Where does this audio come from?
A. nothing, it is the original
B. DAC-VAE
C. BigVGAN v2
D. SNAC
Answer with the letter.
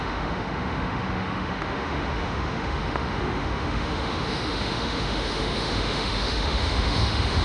B